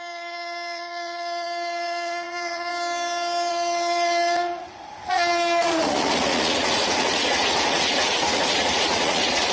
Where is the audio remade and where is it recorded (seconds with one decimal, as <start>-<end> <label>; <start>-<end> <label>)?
0.0-2.7 remade; 2.7-3.5 recorded; 3.5-9.5 remade